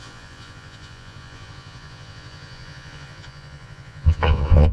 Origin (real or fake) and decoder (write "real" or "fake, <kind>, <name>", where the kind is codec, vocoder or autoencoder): fake, vocoder, Vocos